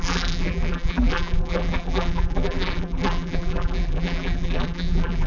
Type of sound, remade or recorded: remade